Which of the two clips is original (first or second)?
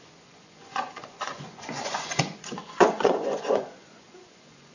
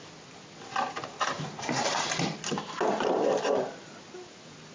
second